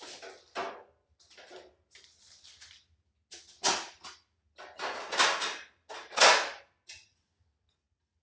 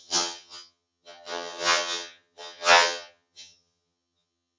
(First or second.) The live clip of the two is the first